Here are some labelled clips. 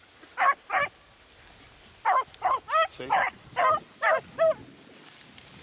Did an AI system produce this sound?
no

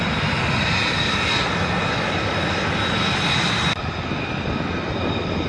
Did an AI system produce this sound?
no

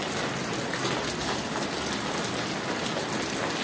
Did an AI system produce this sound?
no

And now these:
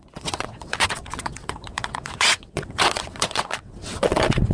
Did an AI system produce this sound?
yes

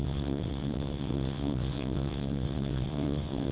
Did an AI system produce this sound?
yes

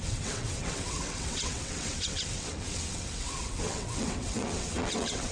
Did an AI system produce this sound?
yes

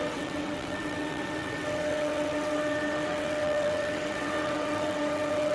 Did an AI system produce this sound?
yes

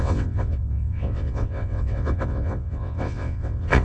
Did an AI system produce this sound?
yes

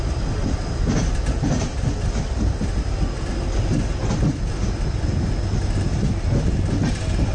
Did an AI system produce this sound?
no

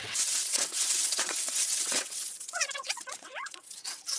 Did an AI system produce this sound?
yes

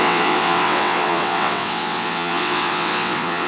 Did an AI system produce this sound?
yes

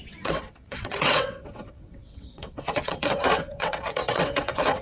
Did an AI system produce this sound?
yes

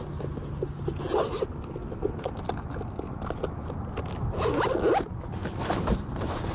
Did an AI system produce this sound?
no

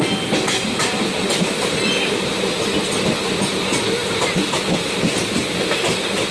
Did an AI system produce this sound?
no